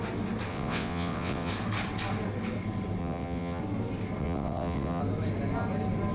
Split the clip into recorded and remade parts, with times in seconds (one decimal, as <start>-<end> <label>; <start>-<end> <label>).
0.0-0.5 recorded; 0.5-1.5 remade; 1.5-3.0 recorded; 3.0-3.6 remade; 3.6-4.2 recorded; 4.2-5.0 remade; 5.0-6.1 recorded